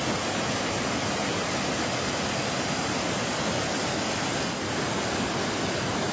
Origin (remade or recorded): recorded